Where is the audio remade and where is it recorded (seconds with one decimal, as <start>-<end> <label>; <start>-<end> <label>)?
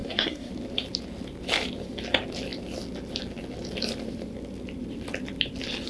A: 0.0-0.5 remade; 0.5-5.9 recorded